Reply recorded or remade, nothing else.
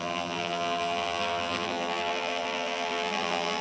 remade